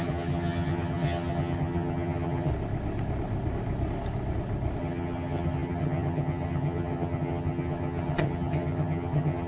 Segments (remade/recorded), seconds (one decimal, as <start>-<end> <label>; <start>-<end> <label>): 0.0-2.5 remade; 2.5-4.8 recorded; 4.8-9.5 remade